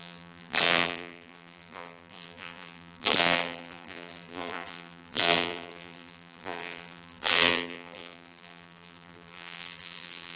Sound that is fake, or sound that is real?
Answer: fake